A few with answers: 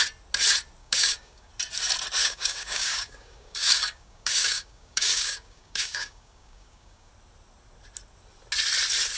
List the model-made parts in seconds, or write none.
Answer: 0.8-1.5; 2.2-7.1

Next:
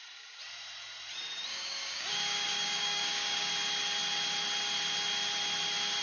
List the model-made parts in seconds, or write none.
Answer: 1.5-3.5

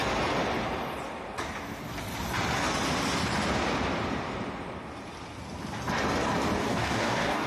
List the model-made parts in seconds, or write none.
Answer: 6.7-7.5

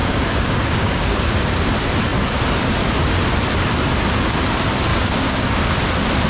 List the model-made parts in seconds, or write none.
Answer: 0.0-1.3; 4.9-5.7

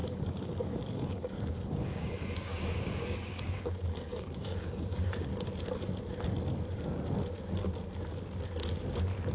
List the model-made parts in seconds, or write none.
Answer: 0.0-5.3

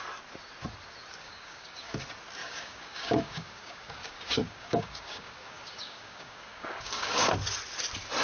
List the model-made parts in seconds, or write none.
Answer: 1.2-2.0; 2.4-7.3